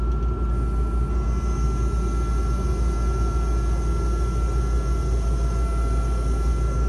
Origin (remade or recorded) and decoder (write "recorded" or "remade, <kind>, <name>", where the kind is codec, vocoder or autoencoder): recorded